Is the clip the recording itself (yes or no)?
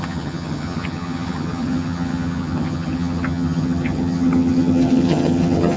no